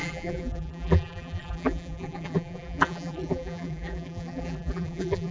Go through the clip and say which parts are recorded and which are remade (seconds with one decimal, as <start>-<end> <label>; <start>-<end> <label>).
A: 0.0-5.3 remade